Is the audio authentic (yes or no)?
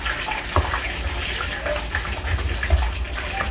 yes